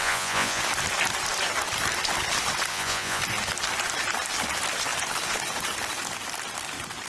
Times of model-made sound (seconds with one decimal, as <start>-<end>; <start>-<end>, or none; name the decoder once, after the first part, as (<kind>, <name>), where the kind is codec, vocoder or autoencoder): 0.0-0.6 (vocoder, Vocos); 2.7-3.2